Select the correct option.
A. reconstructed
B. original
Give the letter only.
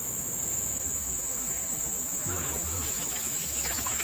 A